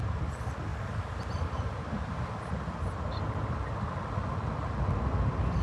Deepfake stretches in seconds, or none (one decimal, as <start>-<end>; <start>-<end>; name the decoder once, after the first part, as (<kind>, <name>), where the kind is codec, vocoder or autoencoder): none